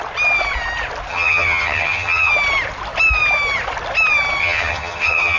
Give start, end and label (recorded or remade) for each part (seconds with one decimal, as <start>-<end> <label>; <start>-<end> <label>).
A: 0.0-1.1 recorded; 1.1-2.3 remade; 2.3-4.4 recorded; 4.4-5.4 remade